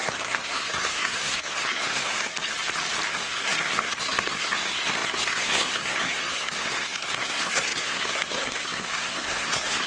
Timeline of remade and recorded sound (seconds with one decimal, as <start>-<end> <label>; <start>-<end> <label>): 0.0-2.3 remade; 2.3-3.1 recorded; 3.1-9.9 remade